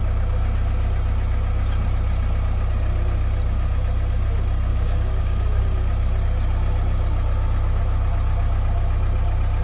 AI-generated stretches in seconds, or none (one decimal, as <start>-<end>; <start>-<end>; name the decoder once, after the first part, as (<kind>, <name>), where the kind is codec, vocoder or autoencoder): 4.7-5.6 (codec, DAC)